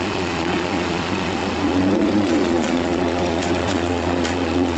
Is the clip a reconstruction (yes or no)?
yes